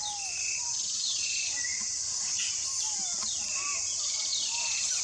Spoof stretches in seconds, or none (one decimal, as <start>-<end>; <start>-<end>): 0.4-1.2